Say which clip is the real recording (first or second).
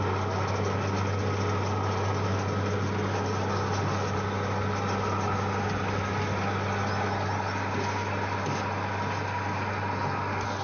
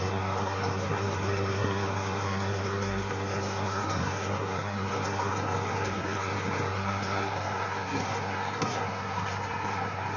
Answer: first